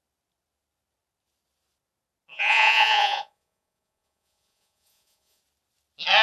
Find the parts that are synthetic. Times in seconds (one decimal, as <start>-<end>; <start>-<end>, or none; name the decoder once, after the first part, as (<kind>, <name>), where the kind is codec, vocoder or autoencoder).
2.3-5.4 (vocoder, Vocos)